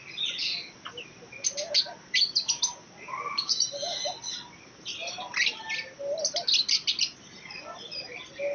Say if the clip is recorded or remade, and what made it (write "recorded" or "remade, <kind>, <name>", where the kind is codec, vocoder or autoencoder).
recorded